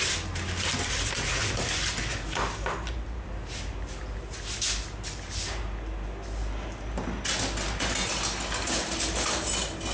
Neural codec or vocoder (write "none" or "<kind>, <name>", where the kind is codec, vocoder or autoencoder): none